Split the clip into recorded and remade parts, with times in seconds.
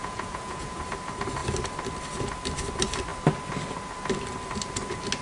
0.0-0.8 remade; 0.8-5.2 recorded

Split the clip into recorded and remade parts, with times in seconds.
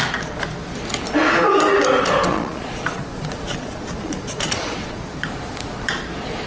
0.0-2.3 recorded; 2.3-5.0 remade; 5.0-6.5 recorded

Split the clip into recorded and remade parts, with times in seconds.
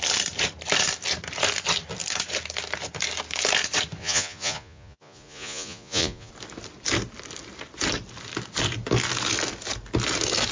0.0-4.0 recorded; 4.0-6.3 remade; 6.3-10.5 recorded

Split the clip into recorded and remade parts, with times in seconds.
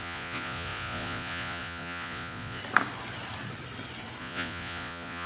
0.0-2.6 remade; 2.6-4.2 recorded; 4.2-5.3 remade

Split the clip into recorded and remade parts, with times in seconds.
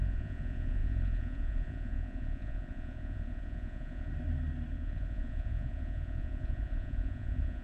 0.0-4.1 remade; 4.1-4.7 recorded; 4.7-7.6 remade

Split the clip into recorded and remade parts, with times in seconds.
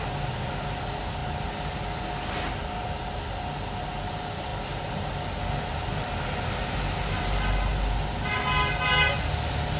0.0-9.8 recorded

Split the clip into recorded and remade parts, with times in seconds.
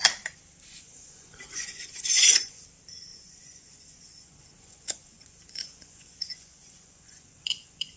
0.0-0.7 recorded; 0.7-2.6 remade; 2.6-3.1 recorded; 3.1-8.0 remade